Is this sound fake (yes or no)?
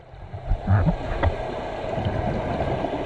no